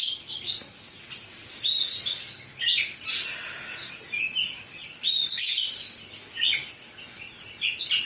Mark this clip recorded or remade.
recorded